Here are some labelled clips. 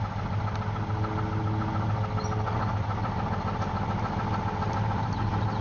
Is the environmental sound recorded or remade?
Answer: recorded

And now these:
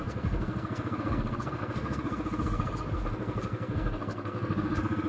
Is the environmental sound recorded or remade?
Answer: remade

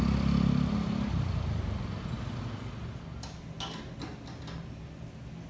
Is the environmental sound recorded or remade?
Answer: recorded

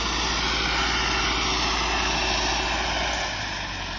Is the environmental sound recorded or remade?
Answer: recorded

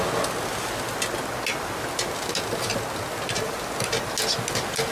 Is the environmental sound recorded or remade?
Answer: recorded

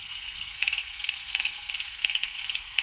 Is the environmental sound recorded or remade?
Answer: remade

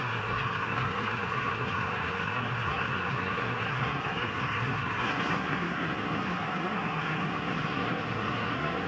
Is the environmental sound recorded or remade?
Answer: remade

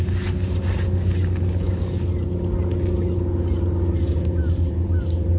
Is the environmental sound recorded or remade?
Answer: recorded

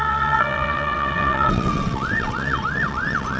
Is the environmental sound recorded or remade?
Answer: remade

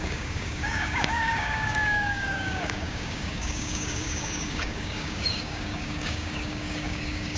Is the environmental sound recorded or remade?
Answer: remade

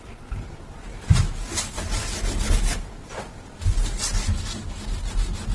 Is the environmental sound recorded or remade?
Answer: recorded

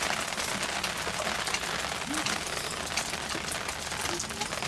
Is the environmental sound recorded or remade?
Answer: recorded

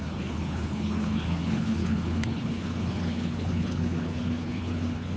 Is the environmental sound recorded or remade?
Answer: remade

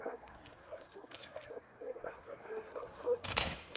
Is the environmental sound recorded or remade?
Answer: remade